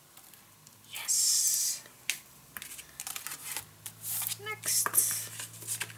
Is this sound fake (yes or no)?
no